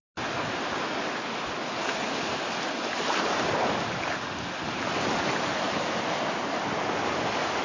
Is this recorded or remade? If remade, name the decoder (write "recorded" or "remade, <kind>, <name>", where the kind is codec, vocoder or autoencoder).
recorded